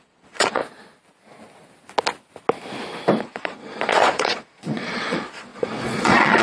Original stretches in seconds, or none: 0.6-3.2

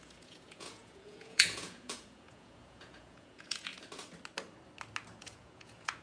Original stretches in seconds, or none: 3.7-5.2